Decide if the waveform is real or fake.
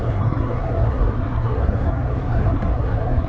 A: fake